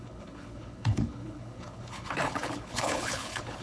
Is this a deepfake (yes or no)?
yes